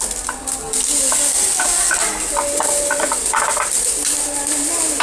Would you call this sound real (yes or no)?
yes